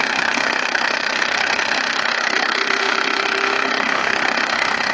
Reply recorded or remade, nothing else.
remade